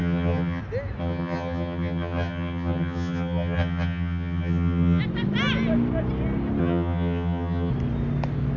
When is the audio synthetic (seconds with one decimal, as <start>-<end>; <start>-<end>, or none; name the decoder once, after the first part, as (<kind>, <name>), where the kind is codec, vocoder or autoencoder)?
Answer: 0.0-0.6 (vocoder, HiFi-GAN); 1.0-5.0; 6.6-7.7